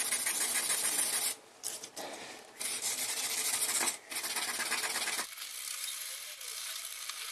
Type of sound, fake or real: fake